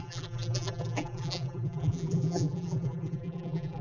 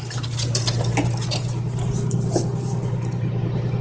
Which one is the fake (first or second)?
first